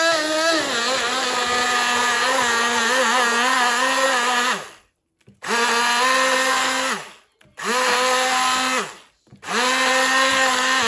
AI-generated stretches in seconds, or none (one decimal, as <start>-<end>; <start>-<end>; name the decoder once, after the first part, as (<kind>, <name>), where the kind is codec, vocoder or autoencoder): none